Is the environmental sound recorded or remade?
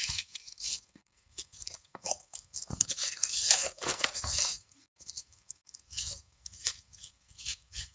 remade